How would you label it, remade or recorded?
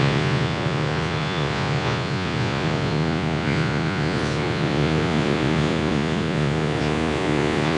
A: remade